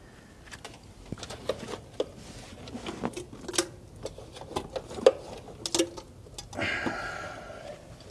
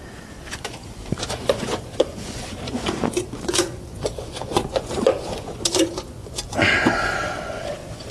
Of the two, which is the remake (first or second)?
second